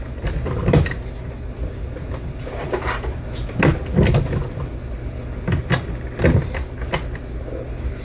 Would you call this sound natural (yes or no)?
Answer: yes